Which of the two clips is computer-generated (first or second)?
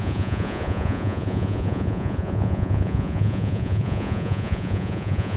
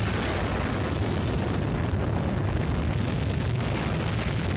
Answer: first